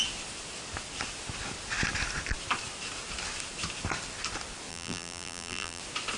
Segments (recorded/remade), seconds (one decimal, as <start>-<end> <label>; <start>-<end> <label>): 0.0-4.7 recorded; 4.7-5.8 remade; 5.8-6.2 recorded